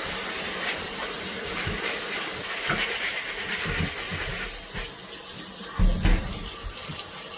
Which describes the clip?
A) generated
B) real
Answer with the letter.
B